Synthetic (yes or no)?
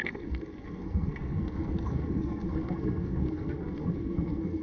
yes